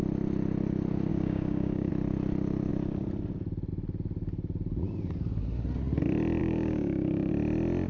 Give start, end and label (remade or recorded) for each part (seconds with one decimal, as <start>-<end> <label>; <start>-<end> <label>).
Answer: 0.0-1.1 recorded; 1.1-1.9 remade; 1.9-6.4 recorded; 6.4-7.3 remade; 7.3-7.9 recorded